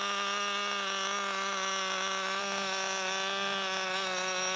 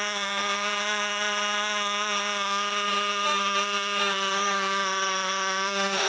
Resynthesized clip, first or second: second